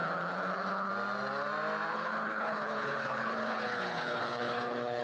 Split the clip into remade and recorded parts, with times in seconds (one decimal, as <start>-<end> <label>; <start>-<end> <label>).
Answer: 0.0-0.9 remade; 0.9-1.9 recorded; 1.9-5.0 remade

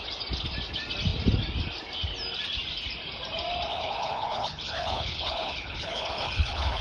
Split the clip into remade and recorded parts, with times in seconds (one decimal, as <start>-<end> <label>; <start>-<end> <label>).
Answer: 0.0-3.7 recorded; 3.7-6.8 remade